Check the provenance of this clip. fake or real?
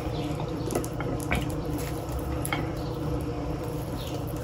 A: fake